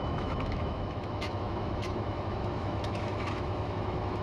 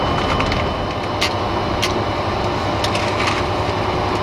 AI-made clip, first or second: first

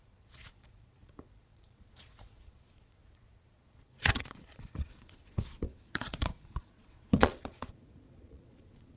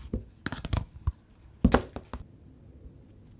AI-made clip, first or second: first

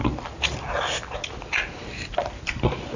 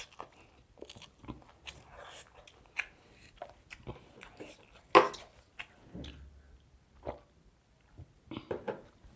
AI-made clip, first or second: first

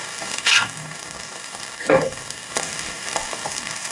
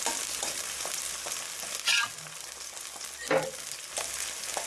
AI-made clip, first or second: first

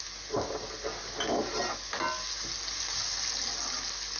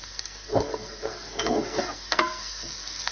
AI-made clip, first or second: second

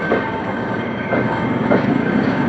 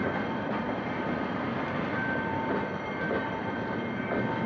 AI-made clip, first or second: first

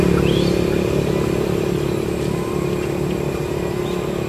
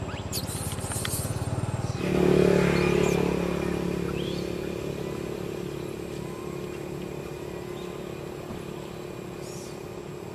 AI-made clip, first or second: first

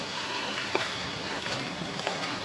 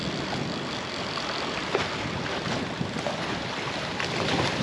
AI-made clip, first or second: first